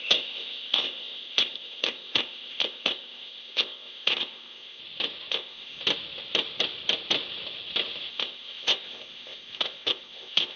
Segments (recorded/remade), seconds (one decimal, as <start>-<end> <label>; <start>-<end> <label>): 0.0-4.8 remade; 4.8-5.3 recorded; 5.3-5.8 remade; 5.8-8.1 recorded; 8.1-10.6 remade